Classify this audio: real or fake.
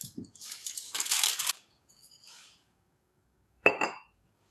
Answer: fake